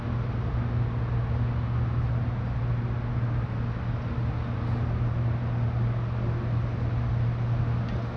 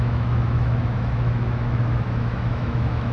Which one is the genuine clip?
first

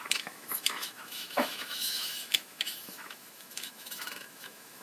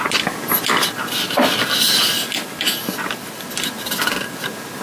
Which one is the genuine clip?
second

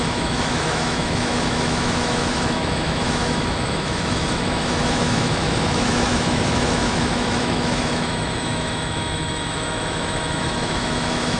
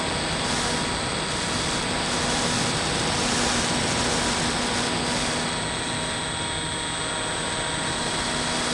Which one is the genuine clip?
second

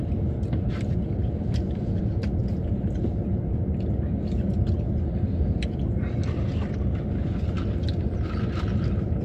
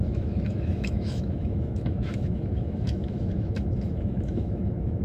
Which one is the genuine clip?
first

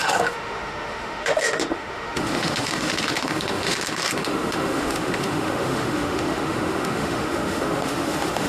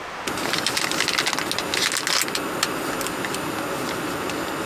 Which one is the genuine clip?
second